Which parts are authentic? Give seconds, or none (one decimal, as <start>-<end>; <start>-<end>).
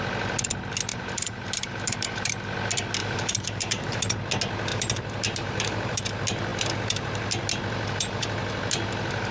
0.0-0.9; 2.3-3.0; 4.2-4.7; 6.0-9.3